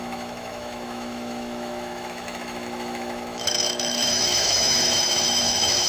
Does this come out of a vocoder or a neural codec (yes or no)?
yes